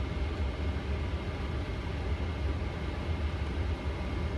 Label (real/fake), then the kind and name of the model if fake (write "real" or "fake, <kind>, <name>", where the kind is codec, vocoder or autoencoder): real